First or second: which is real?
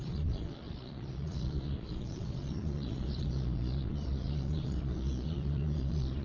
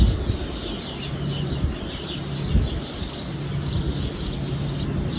second